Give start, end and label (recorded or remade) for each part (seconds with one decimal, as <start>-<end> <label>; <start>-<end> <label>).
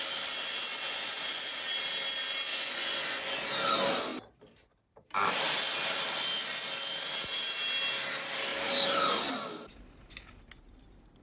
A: 0.0-0.7 recorded; 0.7-1.6 remade; 1.6-2.5 recorded; 2.5-3.3 remade; 3.3-11.2 recorded